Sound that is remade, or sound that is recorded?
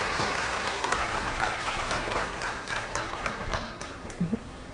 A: remade